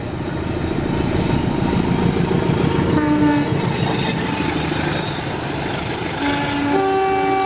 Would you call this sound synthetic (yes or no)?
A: no